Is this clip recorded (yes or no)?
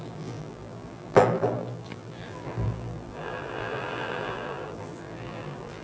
no